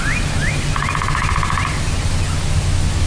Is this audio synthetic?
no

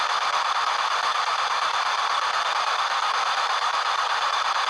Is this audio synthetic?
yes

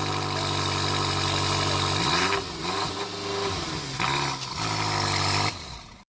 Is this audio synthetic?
no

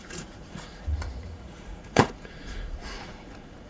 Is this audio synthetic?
yes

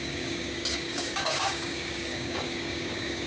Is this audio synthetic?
yes